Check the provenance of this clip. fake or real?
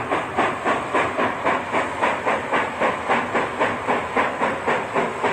real